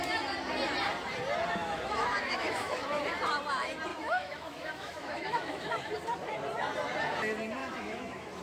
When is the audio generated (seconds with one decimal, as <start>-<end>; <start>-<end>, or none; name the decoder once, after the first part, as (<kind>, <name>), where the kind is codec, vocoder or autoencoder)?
1.6-3.0 (autoencoder, DAC-VAE); 3.9-5.9; 7.6-8.4